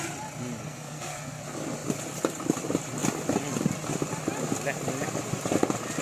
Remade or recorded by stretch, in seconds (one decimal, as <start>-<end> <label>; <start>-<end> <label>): 0.0-0.6 recorded; 0.6-1.4 remade; 1.4-6.0 recorded